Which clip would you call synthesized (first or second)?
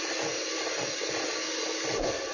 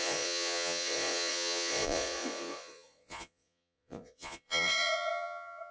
second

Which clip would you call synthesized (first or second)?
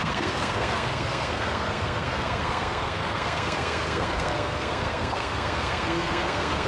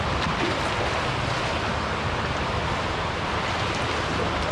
first